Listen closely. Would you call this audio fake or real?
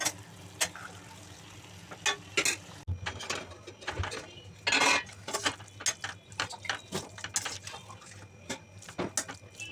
real